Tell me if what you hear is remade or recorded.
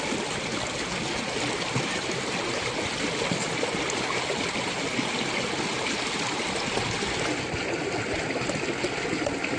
recorded